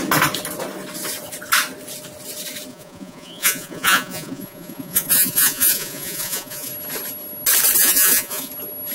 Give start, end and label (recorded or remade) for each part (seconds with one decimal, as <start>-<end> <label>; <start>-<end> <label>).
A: 0.0-2.7 recorded; 2.7-6.7 remade; 6.7-7.8 recorded; 7.8-8.5 remade; 8.5-8.9 recorded